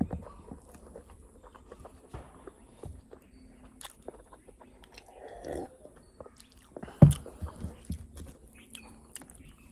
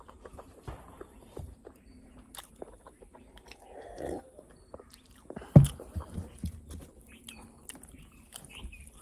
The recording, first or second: first